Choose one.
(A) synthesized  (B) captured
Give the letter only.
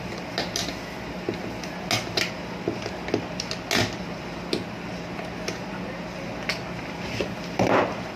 B